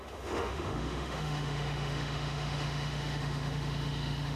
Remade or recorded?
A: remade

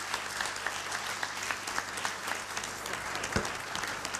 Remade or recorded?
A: recorded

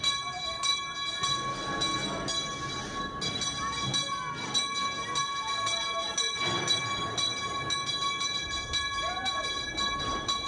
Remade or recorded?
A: recorded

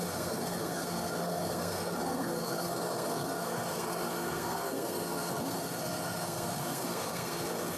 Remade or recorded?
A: remade